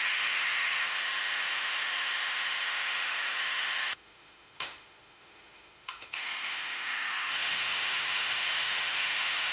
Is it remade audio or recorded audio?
remade